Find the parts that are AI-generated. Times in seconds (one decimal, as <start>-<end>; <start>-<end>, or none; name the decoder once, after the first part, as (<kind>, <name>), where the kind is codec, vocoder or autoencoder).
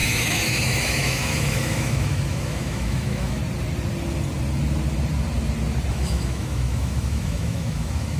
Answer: 0.0-3.4 (autoencoder, DAC-VAE); 5.9-8.2